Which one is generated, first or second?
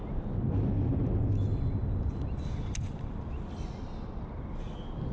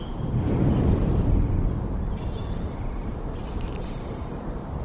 second